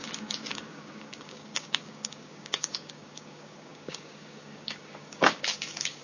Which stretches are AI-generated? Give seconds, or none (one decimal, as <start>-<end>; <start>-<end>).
0.0-6.0